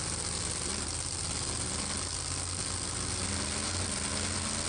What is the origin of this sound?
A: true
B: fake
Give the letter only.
A